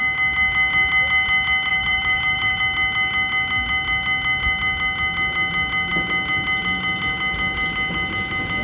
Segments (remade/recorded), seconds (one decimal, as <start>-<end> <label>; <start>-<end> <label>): 0.0-1.7 recorded; 1.7-2.6 remade; 2.6-8.6 recorded

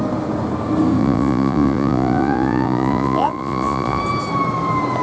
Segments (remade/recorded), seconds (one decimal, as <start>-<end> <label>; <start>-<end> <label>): 0.0-1.0 recorded; 1.0-4.0 remade; 4.0-5.0 recorded

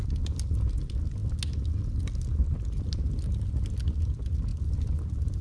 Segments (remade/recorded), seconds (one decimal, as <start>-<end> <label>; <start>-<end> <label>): 0.0-5.4 recorded

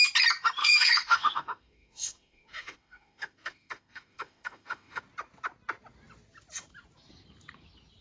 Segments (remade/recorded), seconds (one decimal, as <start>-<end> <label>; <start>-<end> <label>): 0.0-0.6 recorded; 0.6-5.0 remade; 5.0-8.0 recorded

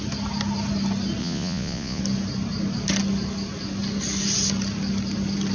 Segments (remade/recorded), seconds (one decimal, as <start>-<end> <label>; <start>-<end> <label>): 0.0-1.2 recorded; 1.2-2.0 remade; 2.0-5.5 recorded

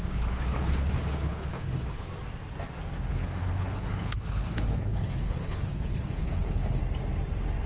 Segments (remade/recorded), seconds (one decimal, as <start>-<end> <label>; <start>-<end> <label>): 0.0-2.1 remade; 2.1-3.1 recorded; 3.1-6.8 remade; 6.8-7.7 recorded